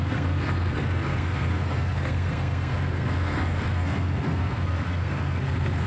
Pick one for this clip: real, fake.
fake